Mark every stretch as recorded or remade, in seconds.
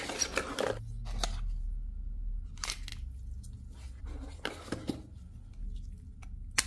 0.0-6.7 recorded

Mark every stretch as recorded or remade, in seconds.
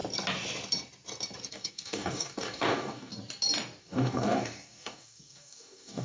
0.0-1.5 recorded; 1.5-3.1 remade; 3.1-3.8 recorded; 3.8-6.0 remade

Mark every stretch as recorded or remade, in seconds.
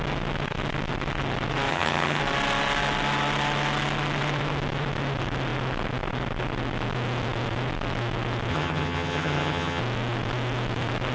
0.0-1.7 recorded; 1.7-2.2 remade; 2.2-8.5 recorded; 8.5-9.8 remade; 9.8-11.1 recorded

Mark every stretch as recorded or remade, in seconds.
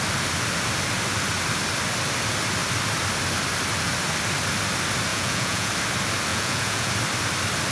0.0-5.1 recorded; 5.1-5.7 remade; 5.7-6.3 recorded; 6.3-6.9 remade; 6.9-7.7 recorded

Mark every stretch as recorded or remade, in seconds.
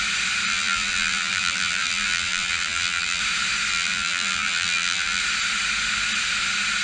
0.0-0.5 recorded; 0.5-3.2 remade; 3.2-3.7 recorded; 3.7-5.2 remade; 5.2-6.8 recorded